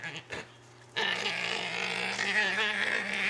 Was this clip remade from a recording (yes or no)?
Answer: no